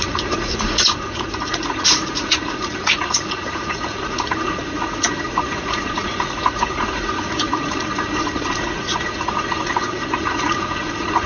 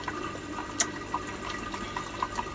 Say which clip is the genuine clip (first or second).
second